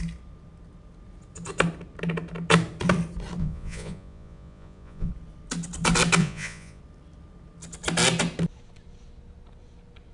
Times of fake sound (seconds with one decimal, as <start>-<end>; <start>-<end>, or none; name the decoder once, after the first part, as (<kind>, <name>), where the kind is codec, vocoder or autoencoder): 3.4-5.1 (vocoder, Vocos); 6.2-6.8